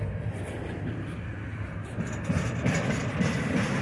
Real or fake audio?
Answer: real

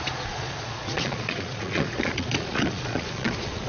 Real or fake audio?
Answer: fake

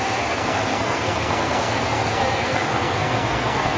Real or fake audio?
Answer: fake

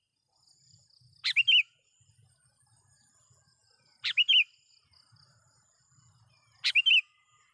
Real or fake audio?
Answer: real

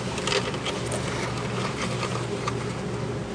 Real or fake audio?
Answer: real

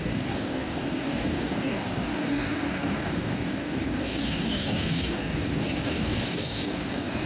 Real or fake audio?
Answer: fake